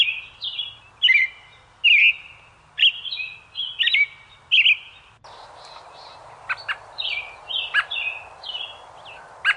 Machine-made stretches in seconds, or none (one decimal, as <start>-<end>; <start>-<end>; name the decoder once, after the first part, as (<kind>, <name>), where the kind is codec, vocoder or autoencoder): none